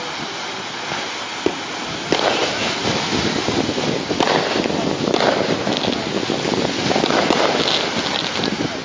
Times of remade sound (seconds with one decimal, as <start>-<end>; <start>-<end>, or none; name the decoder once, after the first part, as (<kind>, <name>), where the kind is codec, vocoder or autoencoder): none